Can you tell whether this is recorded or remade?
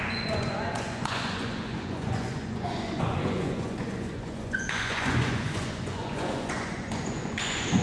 remade